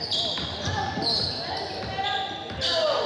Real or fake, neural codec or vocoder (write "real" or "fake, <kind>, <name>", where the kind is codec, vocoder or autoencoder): real